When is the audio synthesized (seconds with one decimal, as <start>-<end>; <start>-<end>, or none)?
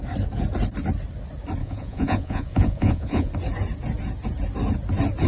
1.6-3.3